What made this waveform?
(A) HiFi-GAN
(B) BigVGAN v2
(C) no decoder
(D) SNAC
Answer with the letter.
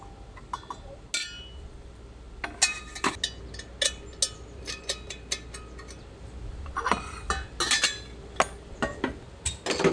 C